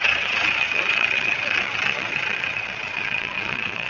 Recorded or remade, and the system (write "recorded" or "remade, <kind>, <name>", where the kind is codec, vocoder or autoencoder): remade, vocoder, WaveNeXt